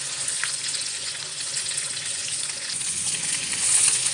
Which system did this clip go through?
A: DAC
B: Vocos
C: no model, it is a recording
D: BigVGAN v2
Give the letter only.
B